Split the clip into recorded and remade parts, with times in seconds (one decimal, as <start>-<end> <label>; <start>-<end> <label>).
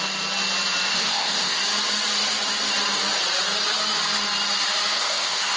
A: 0.0-0.9 recorded; 0.9-1.6 remade; 1.6-5.0 recorded; 5.0-5.6 remade